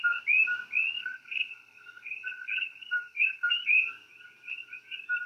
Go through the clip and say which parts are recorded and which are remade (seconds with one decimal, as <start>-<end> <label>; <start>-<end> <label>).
0.0-1.0 recorded; 1.0-3.8 remade; 3.8-5.3 recorded